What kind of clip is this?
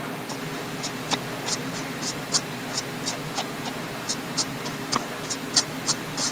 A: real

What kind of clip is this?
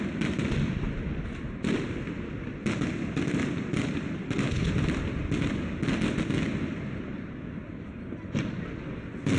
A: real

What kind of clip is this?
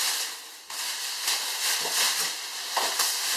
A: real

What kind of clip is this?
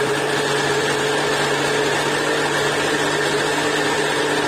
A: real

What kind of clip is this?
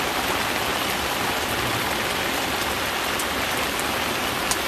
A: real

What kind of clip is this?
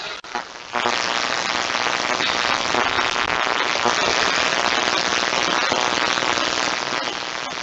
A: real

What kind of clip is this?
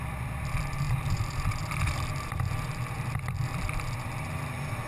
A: fake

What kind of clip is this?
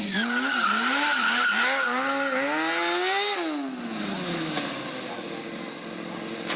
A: real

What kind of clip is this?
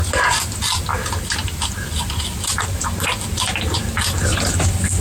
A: real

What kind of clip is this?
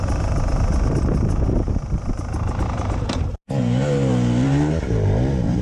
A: fake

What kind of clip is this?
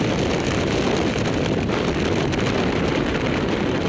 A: fake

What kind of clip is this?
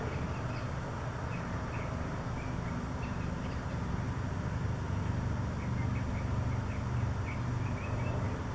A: real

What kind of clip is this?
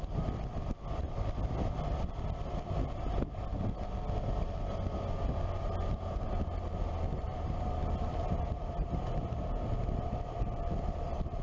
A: real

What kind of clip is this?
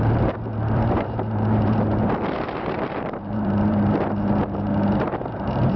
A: fake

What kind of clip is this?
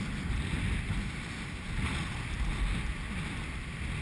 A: real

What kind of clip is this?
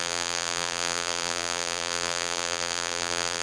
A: fake